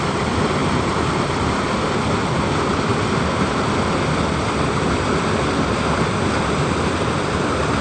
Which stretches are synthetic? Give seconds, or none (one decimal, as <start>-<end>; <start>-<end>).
none